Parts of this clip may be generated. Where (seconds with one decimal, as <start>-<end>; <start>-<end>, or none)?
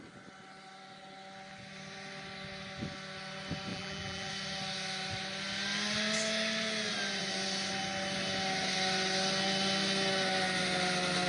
3.7-4.3